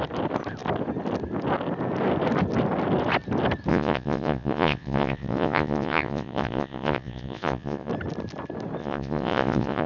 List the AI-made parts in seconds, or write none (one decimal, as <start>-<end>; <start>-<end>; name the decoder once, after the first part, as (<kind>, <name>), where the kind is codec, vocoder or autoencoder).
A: 3.7-7.9 (vocoder, Vocos); 8.8-9.9